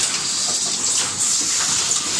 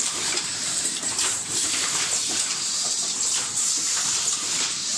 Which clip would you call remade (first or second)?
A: second